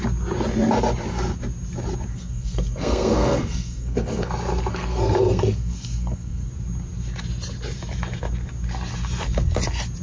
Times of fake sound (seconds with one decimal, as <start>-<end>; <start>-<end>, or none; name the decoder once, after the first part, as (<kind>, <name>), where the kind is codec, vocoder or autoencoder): 2.1-4.3 (codec, SNAC); 4.7-6.5